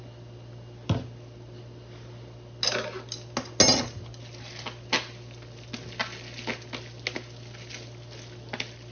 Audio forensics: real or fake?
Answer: real